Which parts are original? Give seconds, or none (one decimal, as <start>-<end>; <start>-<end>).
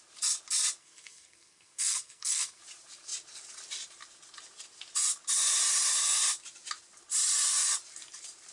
0.0-0.8; 2.6-8.5